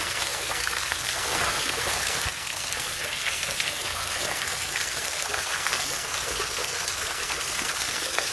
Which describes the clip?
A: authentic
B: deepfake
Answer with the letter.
B